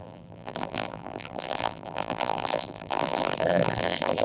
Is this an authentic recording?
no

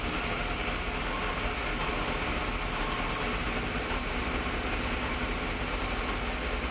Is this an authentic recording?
yes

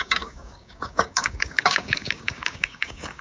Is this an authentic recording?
no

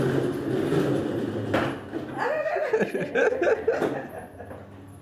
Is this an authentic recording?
yes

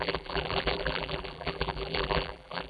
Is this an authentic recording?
no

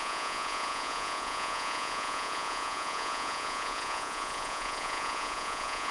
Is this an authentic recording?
no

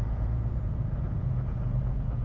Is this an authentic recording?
no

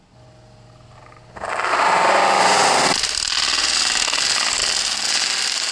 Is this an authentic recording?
yes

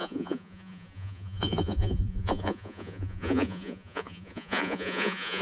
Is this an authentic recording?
no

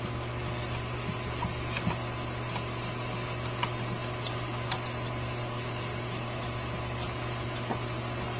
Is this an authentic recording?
yes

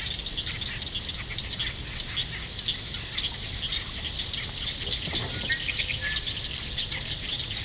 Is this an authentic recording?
yes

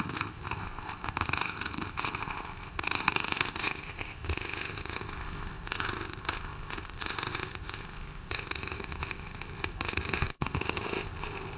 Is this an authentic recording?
no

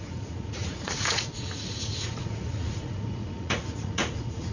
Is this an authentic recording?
no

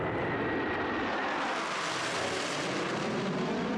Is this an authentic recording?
yes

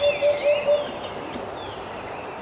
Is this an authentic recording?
yes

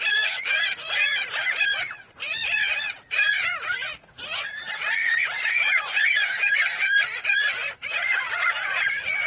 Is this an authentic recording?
no